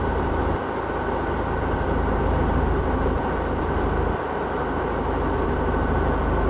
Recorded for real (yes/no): yes